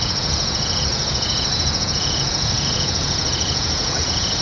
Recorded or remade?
remade